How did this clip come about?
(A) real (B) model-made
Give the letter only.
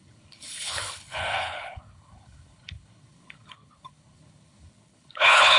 B